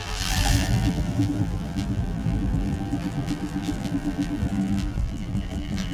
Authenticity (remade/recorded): remade